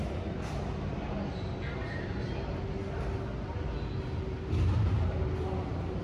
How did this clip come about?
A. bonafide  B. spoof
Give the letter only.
A